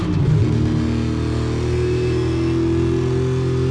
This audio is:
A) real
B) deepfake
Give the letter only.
A